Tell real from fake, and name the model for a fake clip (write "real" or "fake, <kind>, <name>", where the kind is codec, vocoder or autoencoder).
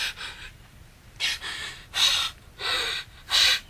real